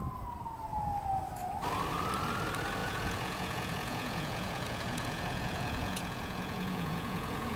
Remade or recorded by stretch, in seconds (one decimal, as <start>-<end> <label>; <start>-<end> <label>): 0.0-2.8 recorded; 2.8-7.6 remade